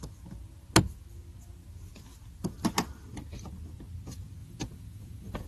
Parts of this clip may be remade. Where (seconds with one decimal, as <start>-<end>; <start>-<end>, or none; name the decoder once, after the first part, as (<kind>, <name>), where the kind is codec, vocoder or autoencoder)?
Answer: 4.4-5.5 (vocoder, Vocos)